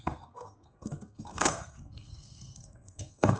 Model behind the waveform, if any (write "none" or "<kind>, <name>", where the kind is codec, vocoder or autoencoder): codec, SNAC